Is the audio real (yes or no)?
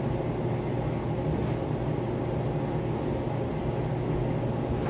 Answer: yes